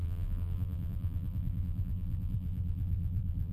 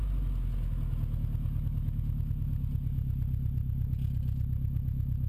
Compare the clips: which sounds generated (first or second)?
first